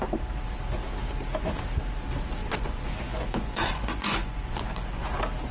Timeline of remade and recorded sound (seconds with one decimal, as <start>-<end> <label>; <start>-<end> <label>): 0.0-2.4 recorded; 2.4-5.0 remade; 5.0-5.5 recorded